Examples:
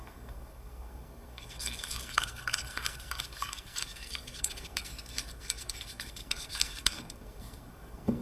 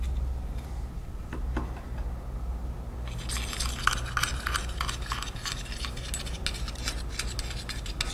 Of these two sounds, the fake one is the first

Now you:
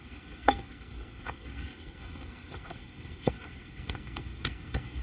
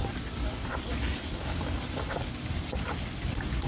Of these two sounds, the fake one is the first